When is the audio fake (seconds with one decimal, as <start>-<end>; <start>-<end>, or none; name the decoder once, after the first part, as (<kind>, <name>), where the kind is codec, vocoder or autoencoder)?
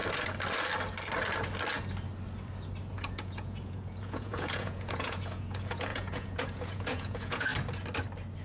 2.9-7.5 (vocoder, Vocos)